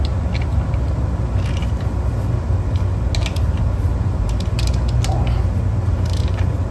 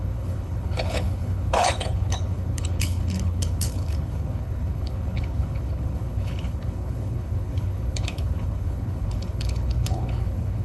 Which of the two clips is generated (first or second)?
second